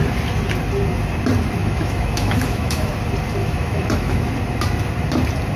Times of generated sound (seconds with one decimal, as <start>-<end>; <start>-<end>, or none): 1.6-2.9; 3.4-4.3